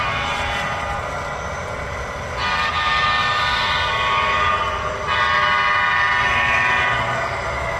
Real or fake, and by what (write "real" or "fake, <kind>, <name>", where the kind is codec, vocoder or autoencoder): real